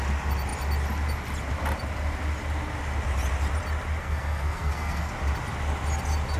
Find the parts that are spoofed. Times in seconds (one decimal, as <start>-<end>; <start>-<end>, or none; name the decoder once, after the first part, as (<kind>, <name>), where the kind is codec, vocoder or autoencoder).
4.0-5.1 (codec, SNAC)